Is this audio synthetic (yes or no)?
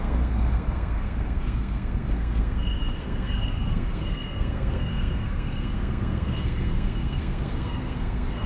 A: yes